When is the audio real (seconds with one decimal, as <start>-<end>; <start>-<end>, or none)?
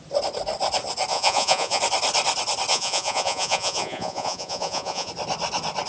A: 0.0-1.1; 1.8-2.7; 5.1-5.9